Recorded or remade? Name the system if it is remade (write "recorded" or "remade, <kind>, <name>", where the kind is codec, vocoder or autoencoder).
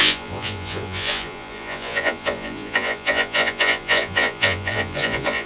remade, vocoder, Vocos